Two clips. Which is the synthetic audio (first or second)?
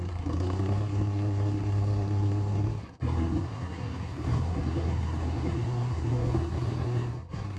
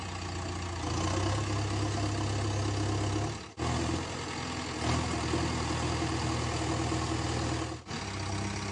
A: first